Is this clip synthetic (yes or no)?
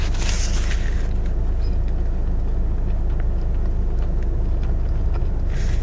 no